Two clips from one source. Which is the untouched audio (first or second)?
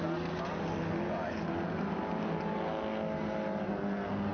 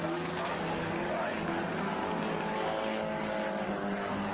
first